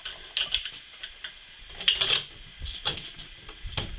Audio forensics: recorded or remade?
recorded